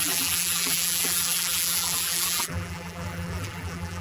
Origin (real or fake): fake